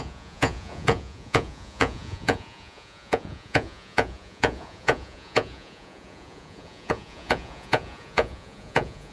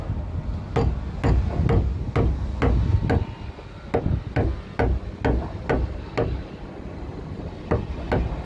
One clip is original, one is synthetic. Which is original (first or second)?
second